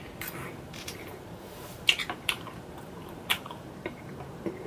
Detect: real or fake fake